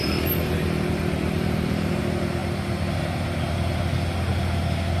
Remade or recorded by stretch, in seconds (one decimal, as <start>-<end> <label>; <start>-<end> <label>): 0.0-2.0 remade; 2.0-5.0 recorded